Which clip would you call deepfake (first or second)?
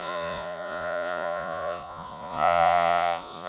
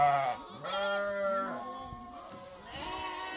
first